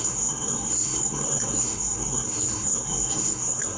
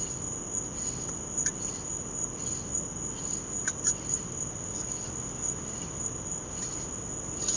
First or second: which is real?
second